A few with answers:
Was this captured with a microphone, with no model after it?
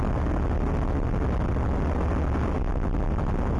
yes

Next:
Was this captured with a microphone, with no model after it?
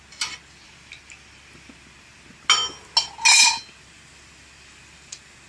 yes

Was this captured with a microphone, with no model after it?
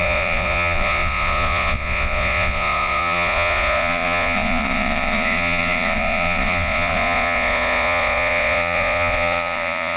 no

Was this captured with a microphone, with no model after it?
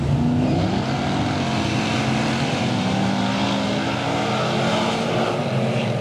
yes